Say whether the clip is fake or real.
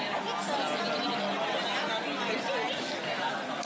real